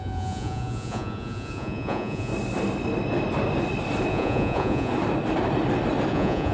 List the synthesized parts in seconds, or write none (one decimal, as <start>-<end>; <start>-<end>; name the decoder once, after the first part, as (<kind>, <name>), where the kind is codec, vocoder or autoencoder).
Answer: 0.0-2.3 (vocoder, Vocos); 4.1-4.9; 6.1-6.5